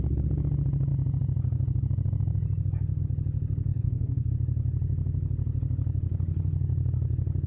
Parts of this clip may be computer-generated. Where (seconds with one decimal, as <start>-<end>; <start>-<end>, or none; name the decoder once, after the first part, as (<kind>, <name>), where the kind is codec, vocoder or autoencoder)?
3.7-4.3 (codec, SNAC)

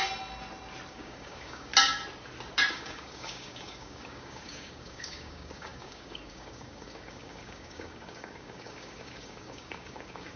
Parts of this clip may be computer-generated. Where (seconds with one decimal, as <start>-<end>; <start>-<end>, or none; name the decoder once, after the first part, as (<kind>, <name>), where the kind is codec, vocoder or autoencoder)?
0.9-1.7 (codec, DAC); 2.7-10.4

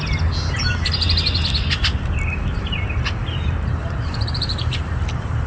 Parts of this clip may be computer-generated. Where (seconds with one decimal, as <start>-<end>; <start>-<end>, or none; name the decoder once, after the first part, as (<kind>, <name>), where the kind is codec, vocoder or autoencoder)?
3.2-5.5 (vocoder, BigVGAN v2)

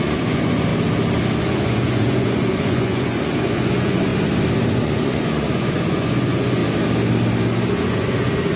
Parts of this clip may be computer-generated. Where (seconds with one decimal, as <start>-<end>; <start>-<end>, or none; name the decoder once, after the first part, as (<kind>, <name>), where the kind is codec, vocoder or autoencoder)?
0.0-0.7 (vocoder, Vocos); 1.4-4.1; 4.7-6.6; 7.7-8.6

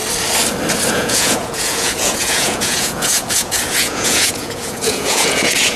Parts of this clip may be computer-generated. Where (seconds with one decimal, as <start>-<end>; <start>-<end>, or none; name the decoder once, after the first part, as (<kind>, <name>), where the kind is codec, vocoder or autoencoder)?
0.9-5.8 (vocoder, Vocos)

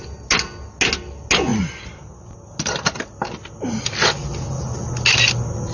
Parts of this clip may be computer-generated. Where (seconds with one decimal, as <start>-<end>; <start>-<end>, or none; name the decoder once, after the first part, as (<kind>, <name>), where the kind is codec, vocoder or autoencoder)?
none

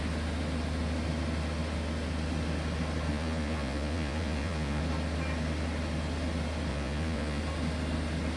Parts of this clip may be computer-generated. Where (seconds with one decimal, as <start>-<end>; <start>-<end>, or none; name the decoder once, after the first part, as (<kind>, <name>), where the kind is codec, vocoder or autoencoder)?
3.1-4.8 (vocoder, Vocos); 6.7-7.4